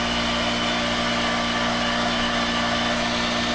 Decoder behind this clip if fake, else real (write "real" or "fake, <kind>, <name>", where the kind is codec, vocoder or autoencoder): real